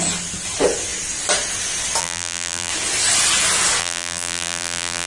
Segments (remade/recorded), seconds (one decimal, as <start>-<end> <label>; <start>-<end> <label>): 0.0-2.0 recorded; 2.0-2.7 remade; 2.7-3.8 recorded; 3.8-5.1 remade